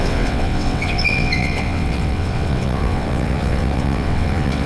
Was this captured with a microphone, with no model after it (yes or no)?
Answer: no